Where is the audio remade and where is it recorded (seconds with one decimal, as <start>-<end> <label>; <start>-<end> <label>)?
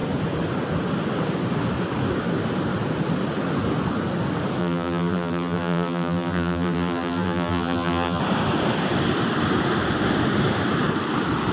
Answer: 0.0-4.6 recorded; 4.6-8.2 remade; 8.2-11.5 recorded